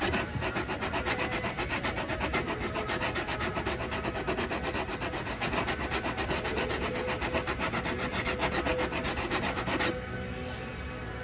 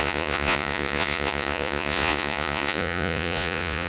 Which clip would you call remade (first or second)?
second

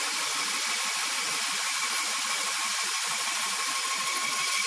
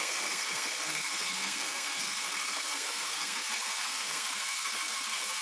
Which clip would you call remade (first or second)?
second